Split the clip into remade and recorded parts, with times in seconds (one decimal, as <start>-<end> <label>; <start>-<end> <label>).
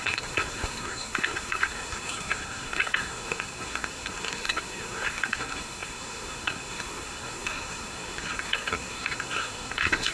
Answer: 0.0-10.1 remade